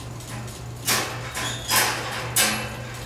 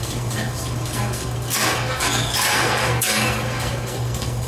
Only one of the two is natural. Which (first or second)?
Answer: first